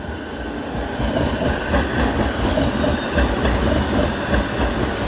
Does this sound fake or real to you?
real